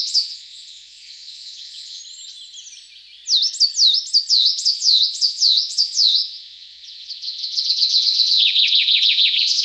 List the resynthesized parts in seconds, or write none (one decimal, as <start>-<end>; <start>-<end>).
0.0-2.0; 4.3-9.6